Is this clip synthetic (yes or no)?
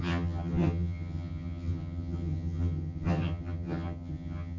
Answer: yes